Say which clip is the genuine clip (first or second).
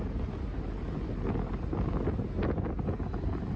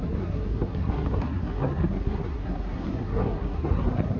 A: first